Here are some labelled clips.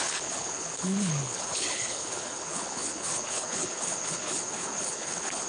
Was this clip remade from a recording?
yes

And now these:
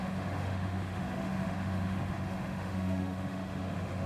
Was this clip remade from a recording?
yes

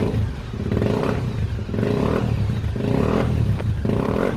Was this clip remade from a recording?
no